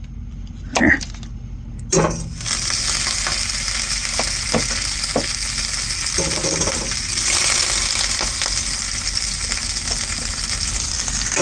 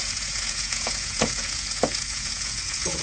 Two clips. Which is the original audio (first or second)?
first